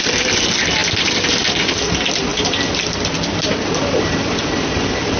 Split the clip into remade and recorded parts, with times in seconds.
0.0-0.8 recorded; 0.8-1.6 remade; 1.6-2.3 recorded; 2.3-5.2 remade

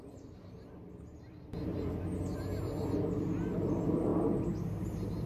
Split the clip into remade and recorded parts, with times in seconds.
0.0-1.7 remade; 1.7-3.5 recorded; 3.5-4.1 remade; 4.1-4.8 recorded; 4.8-5.3 remade

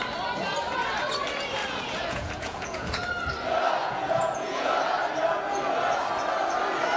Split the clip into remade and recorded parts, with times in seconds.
0.0-1.6 recorded; 1.6-3.0 remade; 3.0-3.8 recorded; 3.8-4.7 remade; 4.7-7.0 recorded

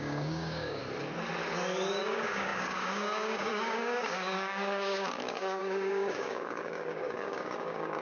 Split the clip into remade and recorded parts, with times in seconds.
0.0-0.8 remade; 0.8-1.9 recorded; 1.9-8.0 remade